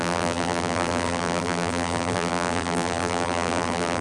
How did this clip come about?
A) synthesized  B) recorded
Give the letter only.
A